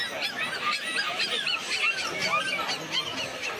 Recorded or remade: recorded